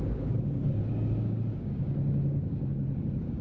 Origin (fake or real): fake